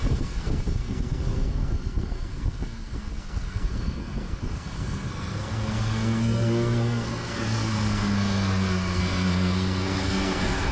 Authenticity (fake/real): fake